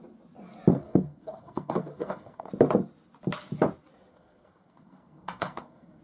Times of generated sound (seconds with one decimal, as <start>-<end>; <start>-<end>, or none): 0.7-2.5; 4.1-6.0